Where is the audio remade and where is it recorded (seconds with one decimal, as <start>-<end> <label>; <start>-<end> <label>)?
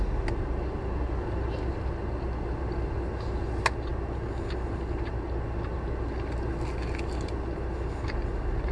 0.0-8.7 recorded